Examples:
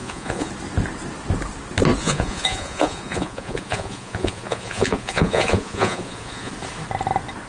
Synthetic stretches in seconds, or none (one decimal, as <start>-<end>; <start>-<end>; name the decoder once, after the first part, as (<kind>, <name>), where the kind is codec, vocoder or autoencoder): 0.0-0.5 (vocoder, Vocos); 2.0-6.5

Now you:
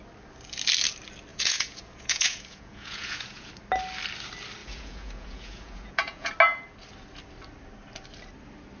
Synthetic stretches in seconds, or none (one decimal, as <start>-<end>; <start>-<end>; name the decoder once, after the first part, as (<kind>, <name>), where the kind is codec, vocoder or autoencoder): 1.3-3.5 (vocoder, Vocos); 4.6-6.3

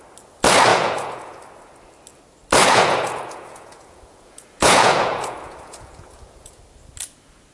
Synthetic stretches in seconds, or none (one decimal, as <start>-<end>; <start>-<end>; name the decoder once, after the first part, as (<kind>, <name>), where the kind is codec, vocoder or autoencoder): 0.7-1.4 (vocoder, Vocos); 2.6-6.6

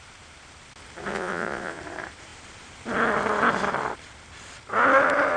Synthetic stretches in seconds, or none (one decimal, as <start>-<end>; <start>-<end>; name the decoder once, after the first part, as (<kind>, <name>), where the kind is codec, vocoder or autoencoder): 1.1-1.8 (vocoder, Vocos)